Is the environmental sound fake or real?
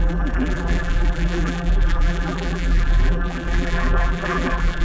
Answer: fake